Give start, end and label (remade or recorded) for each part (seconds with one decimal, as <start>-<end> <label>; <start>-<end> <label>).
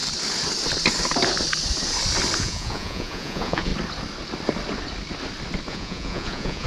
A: 0.0-2.4 recorded; 2.4-3.7 remade; 3.7-5.7 recorded; 5.7-6.7 remade